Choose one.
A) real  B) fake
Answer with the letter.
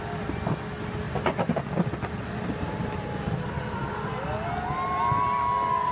A